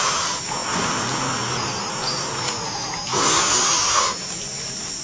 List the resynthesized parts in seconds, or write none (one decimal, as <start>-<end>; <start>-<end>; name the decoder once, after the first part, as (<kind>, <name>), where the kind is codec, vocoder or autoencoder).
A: none